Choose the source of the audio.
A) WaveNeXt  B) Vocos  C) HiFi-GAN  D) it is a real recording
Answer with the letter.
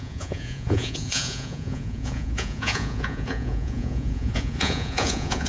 B